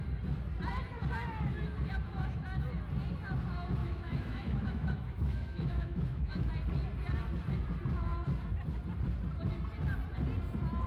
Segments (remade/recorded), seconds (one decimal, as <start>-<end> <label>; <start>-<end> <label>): 0.0-3.8 recorded; 3.8-6.5 remade; 6.5-10.9 recorded